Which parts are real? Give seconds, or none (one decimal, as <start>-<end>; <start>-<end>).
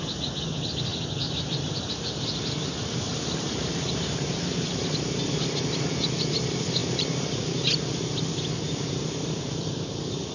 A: 0.0-0.9; 5.2-6.8; 7.4-10.3